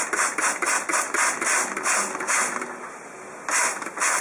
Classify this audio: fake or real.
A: real